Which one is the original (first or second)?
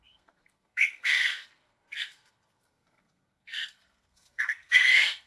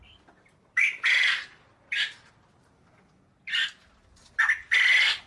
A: second